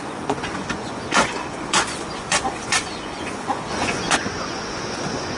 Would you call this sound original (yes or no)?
no